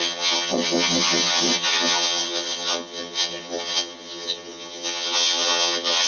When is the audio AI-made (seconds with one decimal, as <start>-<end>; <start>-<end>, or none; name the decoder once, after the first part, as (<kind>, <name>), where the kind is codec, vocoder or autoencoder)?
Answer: 0.0-6.1 (vocoder, HiFi-GAN)